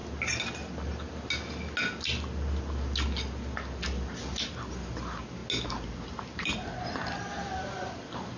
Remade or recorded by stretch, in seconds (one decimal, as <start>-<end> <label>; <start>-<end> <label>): 0.0-8.4 recorded